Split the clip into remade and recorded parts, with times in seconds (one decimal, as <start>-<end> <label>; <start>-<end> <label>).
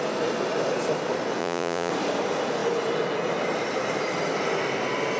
0.0-1.4 recorded; 1.4-1.9 remade; 1.9-5.2 recorded